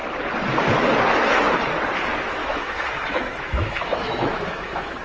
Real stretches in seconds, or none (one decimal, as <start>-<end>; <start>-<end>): 0.0-2.4